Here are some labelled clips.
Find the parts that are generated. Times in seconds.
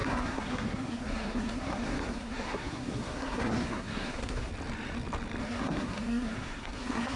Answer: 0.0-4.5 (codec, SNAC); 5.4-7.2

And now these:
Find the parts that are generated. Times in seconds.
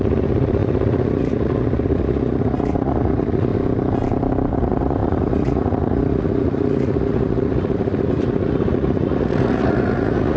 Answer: 0.0-3.5 (vocoder, Vocos); 4.5-10.4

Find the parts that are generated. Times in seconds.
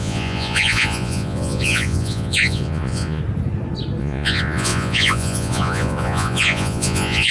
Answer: 0.0-3.2 (vocoder, Vocos); 4.0-7.3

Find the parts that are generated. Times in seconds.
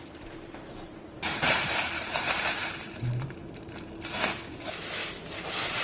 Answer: 0.0-5.0 (vocoder, BigVGAN v2)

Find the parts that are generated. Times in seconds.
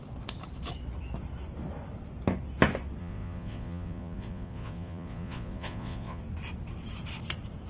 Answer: 3.0-6.2 (vocoder, Vocos)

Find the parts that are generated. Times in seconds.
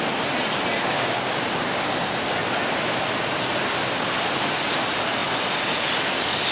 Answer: none